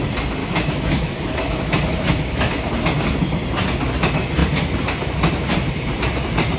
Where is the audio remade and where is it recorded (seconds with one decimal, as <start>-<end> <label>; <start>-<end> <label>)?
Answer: 0.0-0.4 recorded; 0.4-2.5 remade; 2.5-6.6 recorded